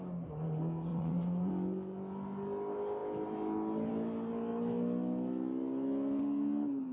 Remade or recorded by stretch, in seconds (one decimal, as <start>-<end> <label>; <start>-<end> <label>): 0.0-0.9 recorded; 0.9-1.5 remade; 1.5-6.9 recorded